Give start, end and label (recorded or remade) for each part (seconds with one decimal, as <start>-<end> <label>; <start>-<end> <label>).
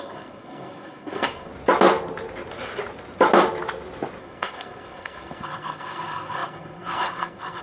0.0-1.5 remade; 1.5-4.2 recorded; 4.2-7.6 remade